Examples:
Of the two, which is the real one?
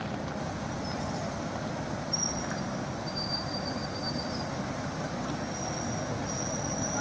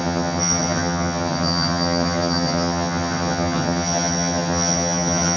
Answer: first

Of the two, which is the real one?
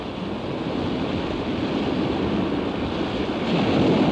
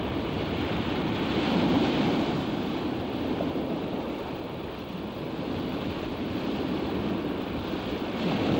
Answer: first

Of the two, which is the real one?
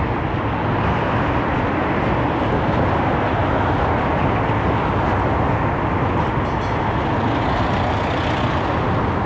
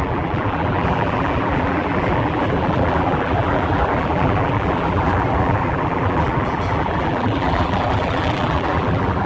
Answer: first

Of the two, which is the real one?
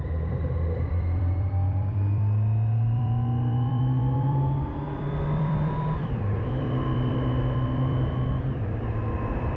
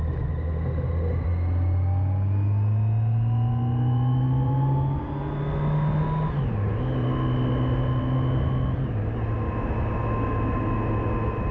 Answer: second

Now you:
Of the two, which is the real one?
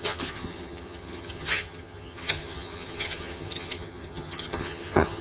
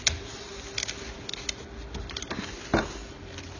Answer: second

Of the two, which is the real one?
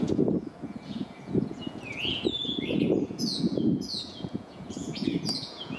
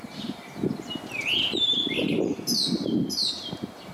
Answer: second